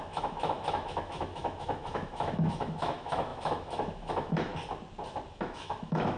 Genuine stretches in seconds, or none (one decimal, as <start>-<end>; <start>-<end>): 4.5-5.3